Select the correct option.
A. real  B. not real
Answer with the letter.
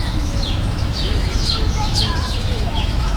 B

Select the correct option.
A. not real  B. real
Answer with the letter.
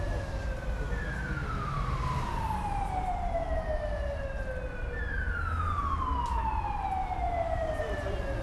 B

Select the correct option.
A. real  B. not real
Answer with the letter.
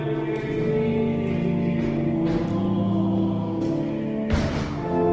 A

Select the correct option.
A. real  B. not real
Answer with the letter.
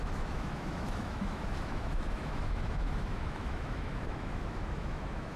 B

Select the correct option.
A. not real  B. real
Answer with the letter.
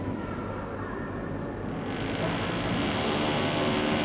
B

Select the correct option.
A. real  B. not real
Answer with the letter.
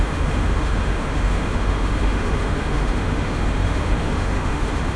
B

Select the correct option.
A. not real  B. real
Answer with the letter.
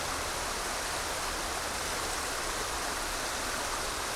B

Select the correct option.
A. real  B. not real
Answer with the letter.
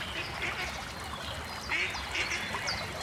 A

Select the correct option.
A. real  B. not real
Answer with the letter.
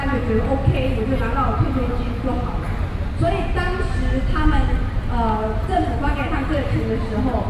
A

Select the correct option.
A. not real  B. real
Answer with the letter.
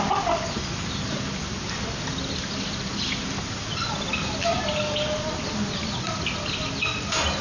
B